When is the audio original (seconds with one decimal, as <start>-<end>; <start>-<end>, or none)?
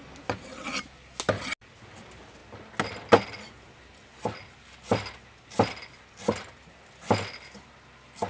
0.0-8.3